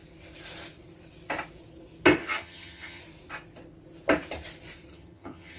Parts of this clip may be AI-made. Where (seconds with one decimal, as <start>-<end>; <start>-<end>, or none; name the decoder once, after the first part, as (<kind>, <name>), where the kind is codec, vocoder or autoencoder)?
2.2-3.0 (vocoder, HiFi-GAN); 4.9-5.6